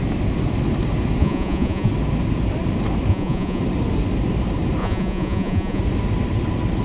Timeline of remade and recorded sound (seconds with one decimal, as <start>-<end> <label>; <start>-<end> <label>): 0.0-1.2 recorded; 1.2-1.9 remade; 1.9-3.1 recorded; 3.1-3.6 remade; 3.6-4.8 recorded; 4.8-5.8 remade; 5.8-6.8 recorded